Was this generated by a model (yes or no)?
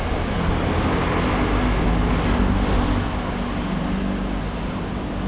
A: no